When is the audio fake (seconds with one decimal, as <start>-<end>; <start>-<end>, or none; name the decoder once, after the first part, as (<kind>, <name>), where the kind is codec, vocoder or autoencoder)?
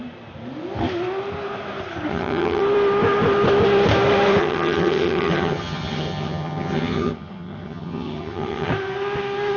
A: 2.1-2.6 (vocoder, HiFi-GAN); 4.4-8.7